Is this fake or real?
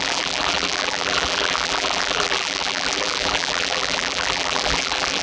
fake